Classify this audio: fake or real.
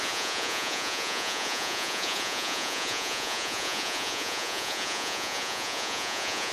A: fake